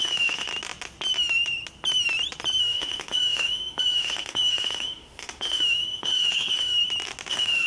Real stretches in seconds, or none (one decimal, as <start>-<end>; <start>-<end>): 0.5-2.6; 6.8-7.3